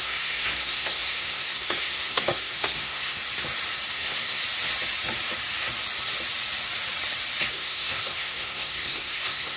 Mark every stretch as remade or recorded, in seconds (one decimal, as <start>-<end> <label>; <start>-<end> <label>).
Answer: 0.0-3.2 remade; 3.2-3.9 recorded; 3.9-4.4 remade; 4.4-7.5 recorded; 7.5-9.6 remade